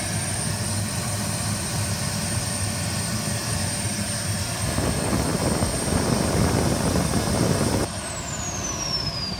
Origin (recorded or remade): recorded